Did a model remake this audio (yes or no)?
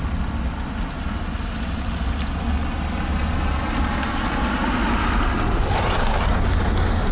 no